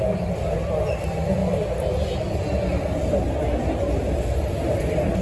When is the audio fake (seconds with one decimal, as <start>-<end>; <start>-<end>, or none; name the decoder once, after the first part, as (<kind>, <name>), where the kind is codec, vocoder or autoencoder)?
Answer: none